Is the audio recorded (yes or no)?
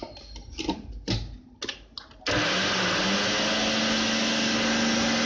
yes